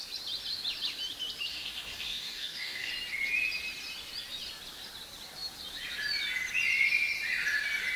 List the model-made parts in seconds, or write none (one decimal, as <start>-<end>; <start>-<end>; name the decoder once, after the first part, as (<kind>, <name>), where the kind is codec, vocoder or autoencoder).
1.5-2.9 (codec, DAC)